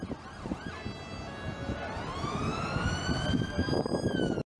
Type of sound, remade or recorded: recorded